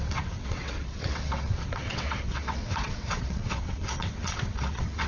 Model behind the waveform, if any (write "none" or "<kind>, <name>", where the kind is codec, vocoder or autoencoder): vocoder, WaveNeXt